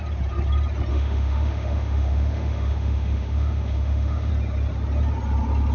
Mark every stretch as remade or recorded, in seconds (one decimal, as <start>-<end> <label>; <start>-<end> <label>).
0.0-0.9 recorded; 0.9-4.3 remade; 4.3-5.7 recorded